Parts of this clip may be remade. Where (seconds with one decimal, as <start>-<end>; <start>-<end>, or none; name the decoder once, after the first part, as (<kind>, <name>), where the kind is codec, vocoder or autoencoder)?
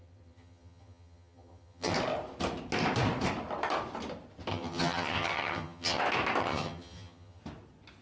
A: 0.0-1.9 (vocoder, HiFi-GAN); 4.5-6.0; 6.4-7.4